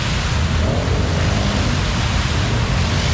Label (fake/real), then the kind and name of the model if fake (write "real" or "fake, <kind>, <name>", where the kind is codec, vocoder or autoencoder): real